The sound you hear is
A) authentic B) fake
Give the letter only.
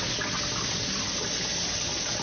A